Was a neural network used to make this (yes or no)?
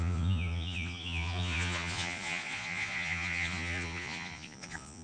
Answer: yes